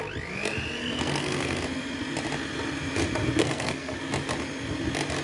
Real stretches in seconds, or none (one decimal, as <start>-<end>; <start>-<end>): 0.0-0.8; 1.6-3.4; 4.0-5.2